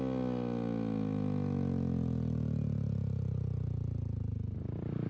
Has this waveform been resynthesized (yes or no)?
no